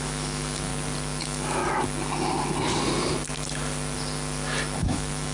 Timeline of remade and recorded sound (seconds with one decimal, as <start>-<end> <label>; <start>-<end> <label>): 0.0-0.7 remade; 0.7-1.2 recorded; 1.2-1.6 remade; 1.6-4.8 recorded; 4.8-5.3 remade